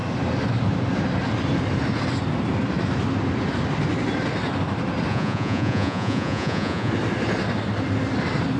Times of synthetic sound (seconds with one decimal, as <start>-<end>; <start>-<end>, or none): 5.1-6.9